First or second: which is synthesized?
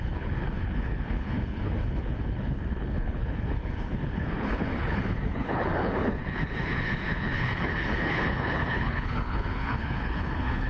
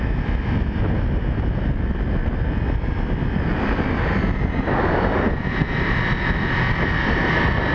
first